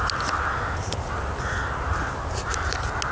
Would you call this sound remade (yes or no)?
no